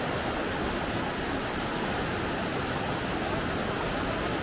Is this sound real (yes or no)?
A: yes